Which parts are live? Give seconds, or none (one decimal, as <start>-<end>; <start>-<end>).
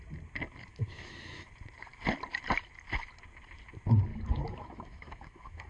0.0-0.7; 1.5-4.1